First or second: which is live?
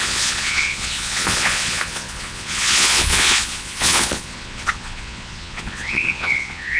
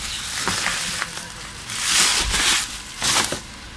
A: second